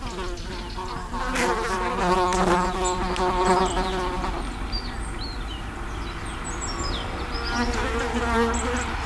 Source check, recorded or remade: recorded